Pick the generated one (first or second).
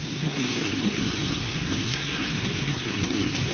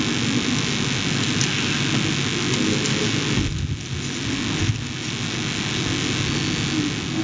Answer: first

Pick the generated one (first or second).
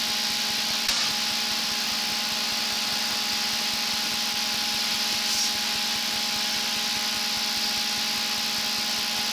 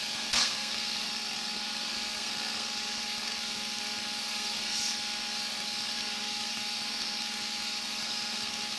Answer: second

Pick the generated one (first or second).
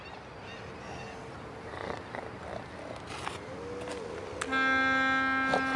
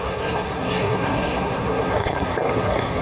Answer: second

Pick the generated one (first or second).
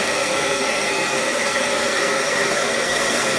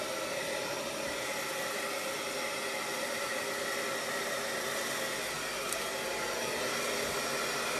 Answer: first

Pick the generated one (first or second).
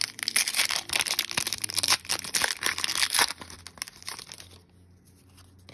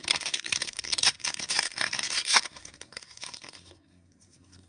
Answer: second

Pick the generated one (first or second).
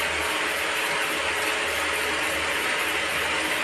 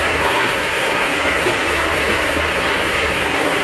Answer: second